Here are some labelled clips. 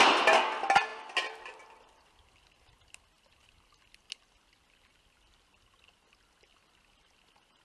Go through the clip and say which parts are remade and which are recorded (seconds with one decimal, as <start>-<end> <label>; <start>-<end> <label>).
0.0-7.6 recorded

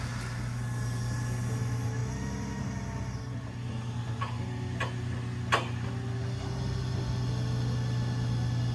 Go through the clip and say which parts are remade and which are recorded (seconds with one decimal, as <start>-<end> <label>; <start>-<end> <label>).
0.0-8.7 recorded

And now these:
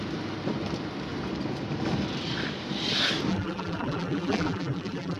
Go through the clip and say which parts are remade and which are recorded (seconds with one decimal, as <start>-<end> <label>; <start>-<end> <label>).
0.0-3.3 recorded; 3.3-5.2 remade